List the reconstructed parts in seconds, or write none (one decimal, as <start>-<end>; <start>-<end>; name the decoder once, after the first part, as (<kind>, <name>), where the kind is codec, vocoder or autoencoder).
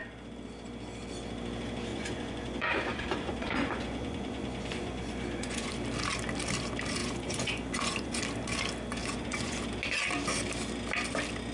1.9-5.7 (vocoder, Vocos); 7.0-8.2; 9.0-9.6